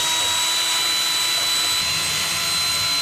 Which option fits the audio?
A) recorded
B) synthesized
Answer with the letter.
A